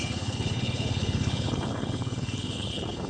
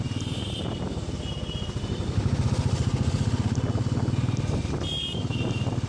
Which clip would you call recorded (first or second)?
second